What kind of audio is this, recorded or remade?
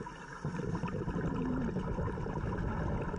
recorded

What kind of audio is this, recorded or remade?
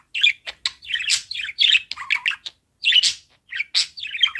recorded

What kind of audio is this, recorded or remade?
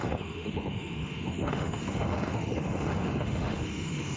remade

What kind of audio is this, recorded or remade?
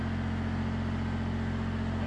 recorded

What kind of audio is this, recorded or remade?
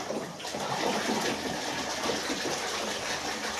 recorded